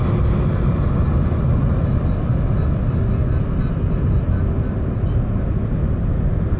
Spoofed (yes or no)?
no